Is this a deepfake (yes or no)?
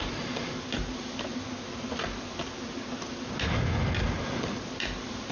no